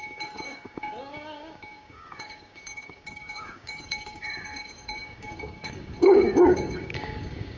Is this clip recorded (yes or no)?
no